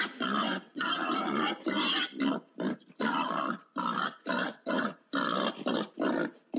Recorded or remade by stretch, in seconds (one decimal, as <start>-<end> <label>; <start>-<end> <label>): 0.0-0.4 recorded; 0.4-0.9 remade; 0.9-4.4 recorded; 4.4-5.1 remade; 5.1-6.6 recorded